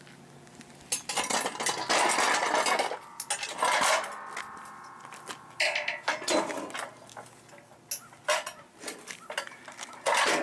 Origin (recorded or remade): recorded